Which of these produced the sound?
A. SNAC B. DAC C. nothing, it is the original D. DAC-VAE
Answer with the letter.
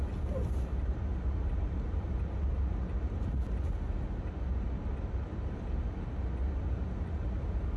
C